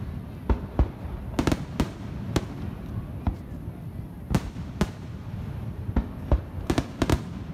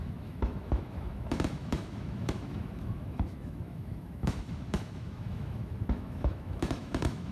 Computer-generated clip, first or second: second